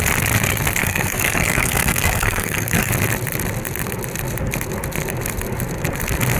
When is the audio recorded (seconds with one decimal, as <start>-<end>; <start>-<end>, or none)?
0.0-0.8; 2.9-6.4